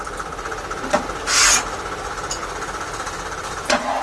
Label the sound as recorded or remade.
recorded